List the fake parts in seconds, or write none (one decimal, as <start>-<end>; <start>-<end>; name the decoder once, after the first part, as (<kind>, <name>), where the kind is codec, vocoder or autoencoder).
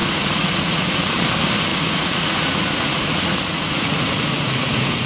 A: 0.0-1.1 (vocoder, Vocos); 1.7-5.1